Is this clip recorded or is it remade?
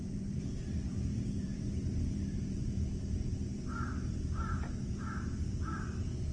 remade